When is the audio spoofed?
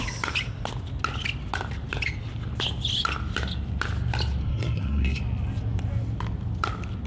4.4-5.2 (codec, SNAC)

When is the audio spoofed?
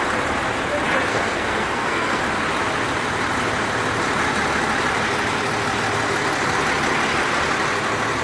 1.1-2.2 (codec, SNAC)